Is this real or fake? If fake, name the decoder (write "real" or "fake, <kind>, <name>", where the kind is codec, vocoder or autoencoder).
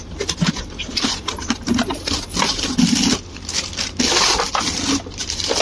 real